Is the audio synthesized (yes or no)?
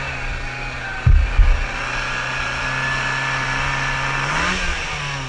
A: no